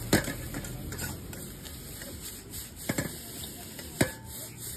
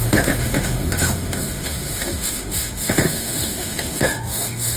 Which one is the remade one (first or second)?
second